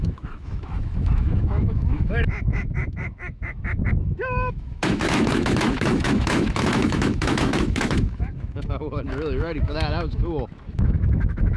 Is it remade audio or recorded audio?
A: remade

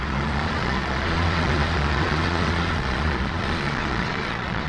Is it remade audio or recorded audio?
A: remade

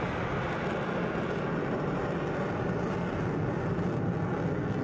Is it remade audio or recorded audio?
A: recorded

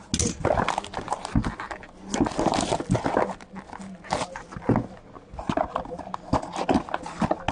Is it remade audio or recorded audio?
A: recorded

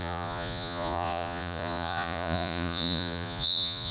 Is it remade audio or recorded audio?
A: remade